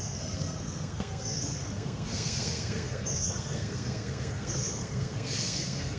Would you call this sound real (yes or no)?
no